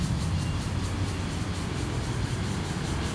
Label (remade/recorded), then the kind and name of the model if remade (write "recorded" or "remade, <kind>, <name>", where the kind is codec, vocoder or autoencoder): recorded